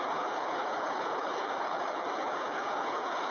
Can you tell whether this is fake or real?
fake